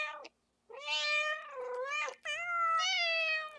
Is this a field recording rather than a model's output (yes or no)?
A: yes